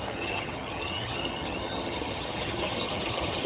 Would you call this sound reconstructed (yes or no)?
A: yes